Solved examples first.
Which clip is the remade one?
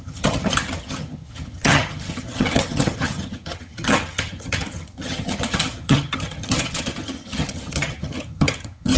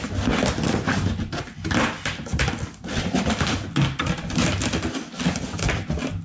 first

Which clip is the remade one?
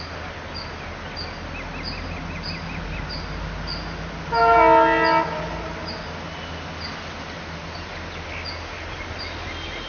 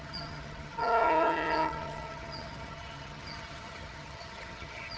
second